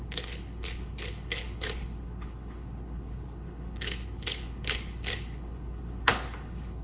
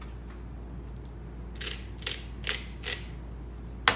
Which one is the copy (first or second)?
first